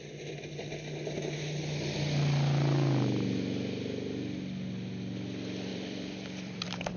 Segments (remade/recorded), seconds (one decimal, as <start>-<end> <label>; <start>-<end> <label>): 0.0-5.7 recorded; 5.7-7.0 remade